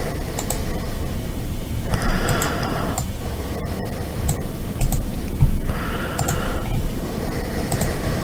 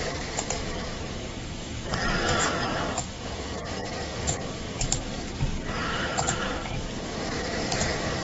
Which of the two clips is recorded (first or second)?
first